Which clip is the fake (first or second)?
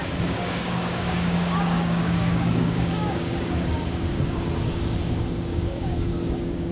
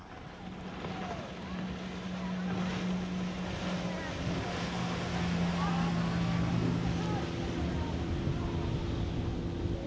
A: first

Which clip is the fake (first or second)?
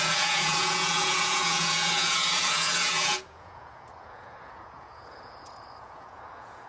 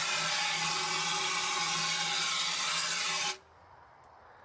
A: first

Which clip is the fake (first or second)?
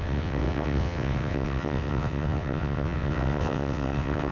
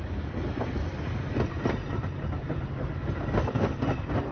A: first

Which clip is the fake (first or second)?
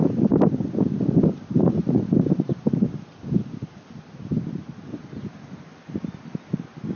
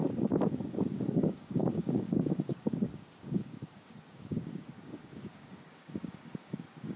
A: second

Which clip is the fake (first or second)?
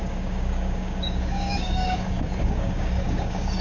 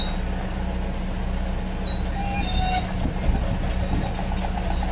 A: first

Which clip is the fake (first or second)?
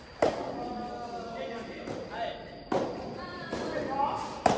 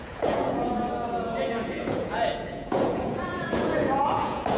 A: second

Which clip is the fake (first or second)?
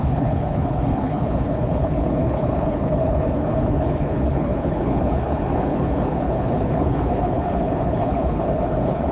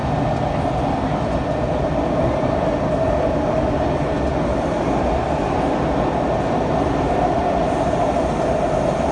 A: first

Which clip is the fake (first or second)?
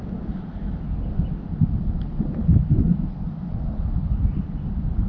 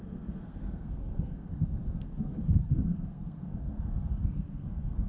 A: second